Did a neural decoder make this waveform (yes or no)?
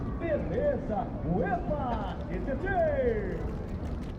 no